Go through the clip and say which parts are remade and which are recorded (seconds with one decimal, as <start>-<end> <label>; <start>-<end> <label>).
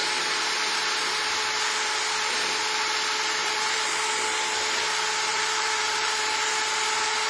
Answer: 0.0-3.4 recorded; 3.4-3.9 remade; 3.9-5.3 recorded; 5.3-6.4 remade; 6.4-7.3 recorded